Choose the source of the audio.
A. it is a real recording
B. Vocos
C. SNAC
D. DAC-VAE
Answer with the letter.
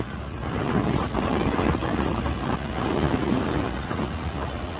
B